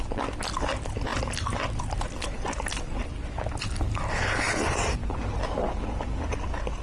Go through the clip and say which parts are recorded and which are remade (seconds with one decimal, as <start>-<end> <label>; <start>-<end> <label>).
0.0-6.8 recorded